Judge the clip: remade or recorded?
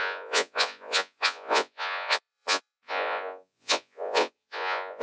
remade